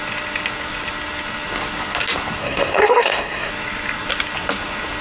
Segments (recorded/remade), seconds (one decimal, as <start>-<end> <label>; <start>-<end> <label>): 0.0-2.4 recorded; 2.4-3.5 remade; 3.5-5.0 recorded